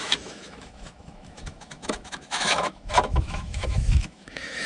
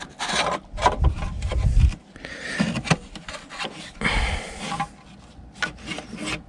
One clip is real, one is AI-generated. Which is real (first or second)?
second